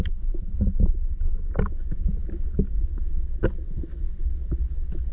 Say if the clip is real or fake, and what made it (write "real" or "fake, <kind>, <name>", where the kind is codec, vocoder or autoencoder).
real